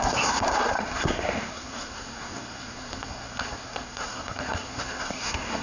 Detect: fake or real fake